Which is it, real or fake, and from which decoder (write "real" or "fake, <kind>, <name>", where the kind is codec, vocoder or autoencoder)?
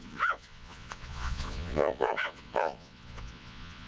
fake, vocoder, Vocos